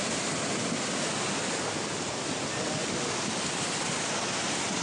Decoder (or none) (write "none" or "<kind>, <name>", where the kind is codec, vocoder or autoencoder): none